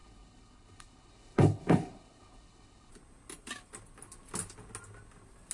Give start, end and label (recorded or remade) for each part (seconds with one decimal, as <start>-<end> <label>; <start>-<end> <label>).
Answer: 0.0-2.9 remade; 2.9-5.5 recorded